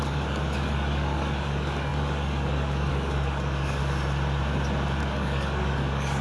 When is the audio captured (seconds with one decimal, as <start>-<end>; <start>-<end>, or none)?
3.8-5.0